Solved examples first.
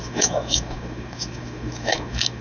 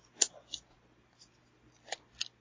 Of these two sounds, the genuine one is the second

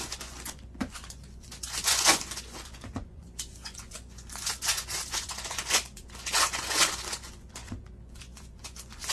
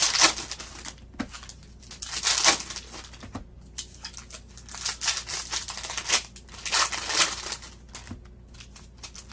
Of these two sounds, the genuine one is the second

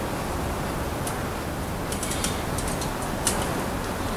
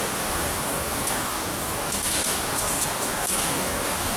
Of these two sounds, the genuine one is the first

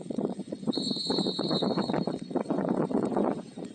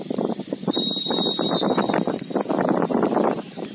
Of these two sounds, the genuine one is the second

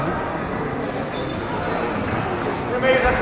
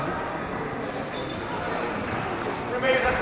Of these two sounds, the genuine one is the first